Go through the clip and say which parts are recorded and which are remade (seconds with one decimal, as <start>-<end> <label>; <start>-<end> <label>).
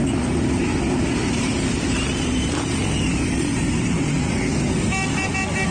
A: 0.0-1.2 recorded; 1.2-4.4 remade; 4.4-5.7 recorded